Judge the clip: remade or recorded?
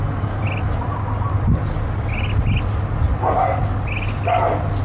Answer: recorded